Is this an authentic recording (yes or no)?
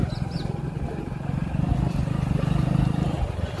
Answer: yes